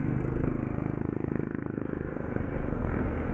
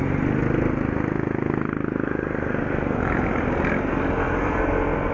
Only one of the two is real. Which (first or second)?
second